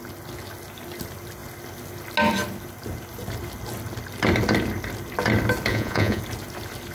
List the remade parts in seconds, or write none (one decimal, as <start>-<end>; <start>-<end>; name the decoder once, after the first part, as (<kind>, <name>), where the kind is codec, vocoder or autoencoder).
5.7-6.2 (vocoder, Vocos)